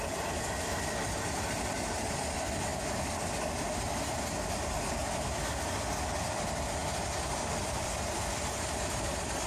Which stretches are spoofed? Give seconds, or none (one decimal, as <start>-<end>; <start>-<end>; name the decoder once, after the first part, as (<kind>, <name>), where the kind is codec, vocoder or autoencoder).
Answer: 0.0-2.7 (vocoder, BigVGAN v2); 6.3-6.8; 7.4-9.5